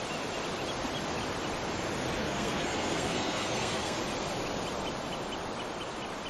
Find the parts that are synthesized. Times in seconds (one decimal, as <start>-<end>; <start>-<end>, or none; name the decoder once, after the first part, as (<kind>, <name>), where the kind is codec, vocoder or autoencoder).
2.2-4.0 (codec, SNAC)